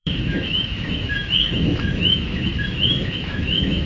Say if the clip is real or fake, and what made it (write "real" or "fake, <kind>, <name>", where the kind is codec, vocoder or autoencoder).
fake, autoencoder, DAC-VAE